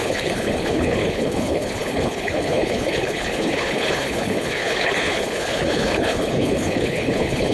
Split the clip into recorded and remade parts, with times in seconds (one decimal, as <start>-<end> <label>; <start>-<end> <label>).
0.0-7.5 remade

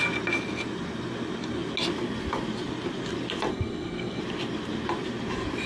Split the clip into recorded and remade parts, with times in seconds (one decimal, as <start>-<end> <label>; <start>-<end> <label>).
0.0-3.5 recorded; 3.5-4.2 remade; 4.2-5.7 recorded

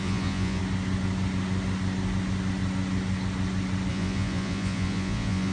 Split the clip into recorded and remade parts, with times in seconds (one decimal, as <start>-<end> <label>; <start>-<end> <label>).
0.0-0.6 remade; 0.6-3.9 recorded; 3.9-5.5 remade

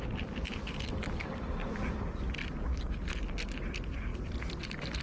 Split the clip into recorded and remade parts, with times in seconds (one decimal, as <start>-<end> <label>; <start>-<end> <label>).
0.0-4.1 recorded; 4.1-5.0 remade

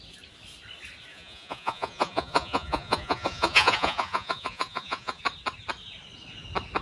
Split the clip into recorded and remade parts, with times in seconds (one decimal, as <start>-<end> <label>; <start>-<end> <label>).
0.0-1.1 recorded; 1.1-5.2 remade; 5.2-6.8 recorded

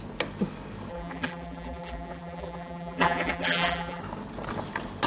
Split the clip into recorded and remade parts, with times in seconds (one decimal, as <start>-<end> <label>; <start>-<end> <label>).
0.0-0.9 recorded; 0.9-4.0 remade; 4.0-5.1 recorded

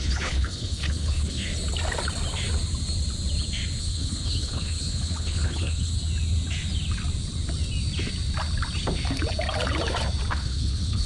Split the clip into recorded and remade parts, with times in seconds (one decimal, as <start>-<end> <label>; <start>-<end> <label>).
0.0-1.5 remade; 1.5-3.8 recorded; 3.8-5.9 remade; 5.9-10.3 recorded; 10.3-11.1 remade

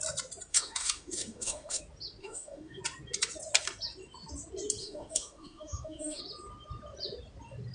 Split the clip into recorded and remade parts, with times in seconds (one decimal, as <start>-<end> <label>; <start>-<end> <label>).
0.0-0.5 recorded; 0.5-1.8 remade; 1.8-2.2 recorded; 2.2-2.8 remade; 2.8-4.8 recorded; 4.8-6.2 remade; 6.2-7.7 recorded